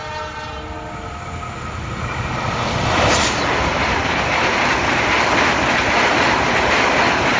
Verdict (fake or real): real